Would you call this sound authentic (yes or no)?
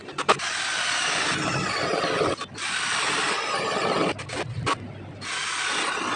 yes